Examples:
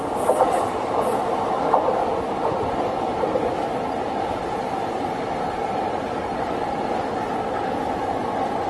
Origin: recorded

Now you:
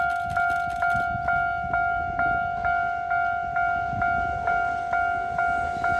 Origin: recorded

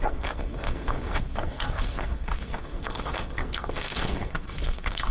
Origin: remade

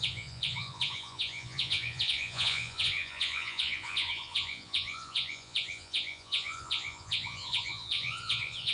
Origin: remade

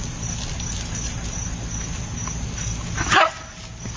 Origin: recorded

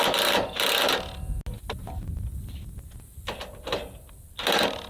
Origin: recorded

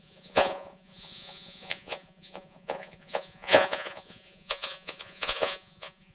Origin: remade